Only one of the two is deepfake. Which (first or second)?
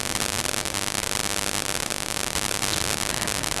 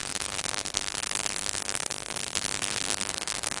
second